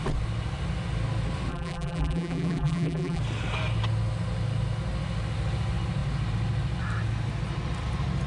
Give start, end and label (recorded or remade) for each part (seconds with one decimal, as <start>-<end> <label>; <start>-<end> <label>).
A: 0.0-1.5 recorded; 1.5-3.2 remade; 3.2-8.3 recorded